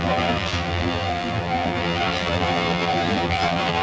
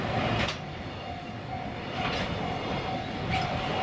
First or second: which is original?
second